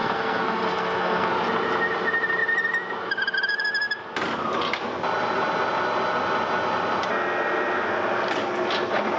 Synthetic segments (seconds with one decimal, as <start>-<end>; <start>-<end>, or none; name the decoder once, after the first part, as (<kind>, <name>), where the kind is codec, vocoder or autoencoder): 0.0-1.3 (codec, SNAC)